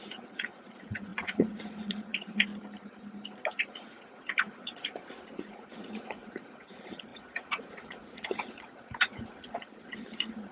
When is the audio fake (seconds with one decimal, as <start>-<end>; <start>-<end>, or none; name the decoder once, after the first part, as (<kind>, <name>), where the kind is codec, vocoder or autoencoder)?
0.0-2.5 (vocoder, Vocos); 3.5-10.5